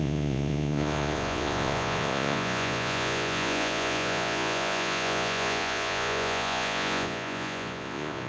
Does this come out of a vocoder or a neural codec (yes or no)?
yes